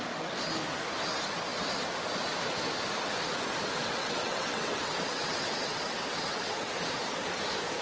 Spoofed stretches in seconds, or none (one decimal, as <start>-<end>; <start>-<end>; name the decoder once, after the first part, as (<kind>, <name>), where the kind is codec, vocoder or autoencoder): 3.8-6.7 (vocoder, WaveNeXt)